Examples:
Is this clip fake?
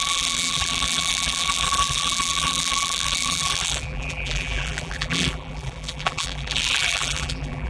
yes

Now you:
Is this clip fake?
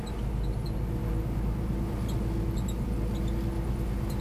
no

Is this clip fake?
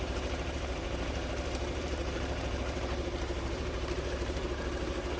yes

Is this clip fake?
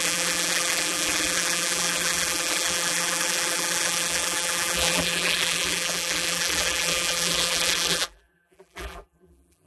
yes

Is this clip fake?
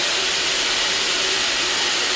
no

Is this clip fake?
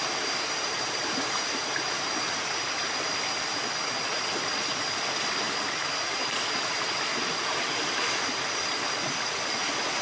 no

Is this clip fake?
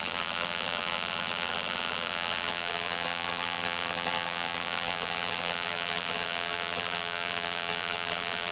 yes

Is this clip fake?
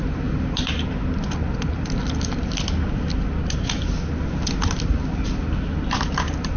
no